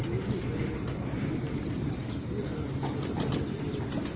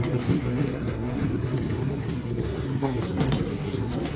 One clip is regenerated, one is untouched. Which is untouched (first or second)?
first